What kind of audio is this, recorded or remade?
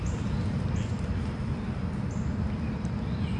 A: recorded